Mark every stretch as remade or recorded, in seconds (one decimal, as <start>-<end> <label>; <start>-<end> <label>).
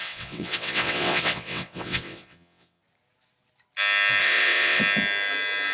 0.0-2.8 remade; 2.8-4.2 recorded; 4.2-4.8 remade; 4.8-5.7 recorded